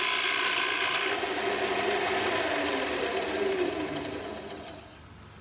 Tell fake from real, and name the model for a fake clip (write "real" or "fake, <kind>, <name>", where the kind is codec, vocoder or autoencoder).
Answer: real